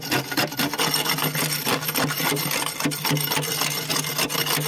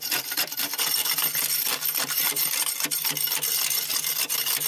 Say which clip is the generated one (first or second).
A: second